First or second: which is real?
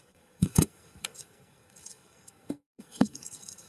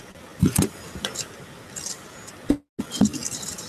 second